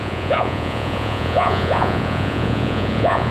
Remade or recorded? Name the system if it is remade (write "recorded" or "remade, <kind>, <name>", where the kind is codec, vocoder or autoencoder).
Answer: remade, vocoder, Vocos